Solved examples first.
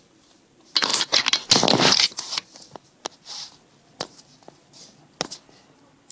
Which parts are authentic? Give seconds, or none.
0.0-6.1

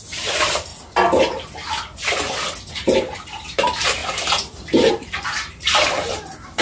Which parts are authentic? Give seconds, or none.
0.7-2.7; 4.0-4.9